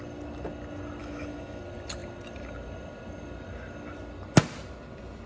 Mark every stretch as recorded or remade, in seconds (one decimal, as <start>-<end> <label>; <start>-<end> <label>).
0.0-1.0 recorded; 1.0-1.6 remade; 1.6-5.3 recorded